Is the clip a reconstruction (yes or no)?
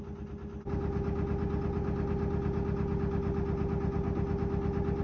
no